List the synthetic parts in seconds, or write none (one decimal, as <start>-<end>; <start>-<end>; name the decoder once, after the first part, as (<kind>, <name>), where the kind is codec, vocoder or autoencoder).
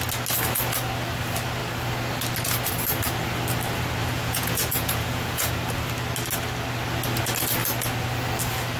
4.0-5.5 (vocoder, Vocos)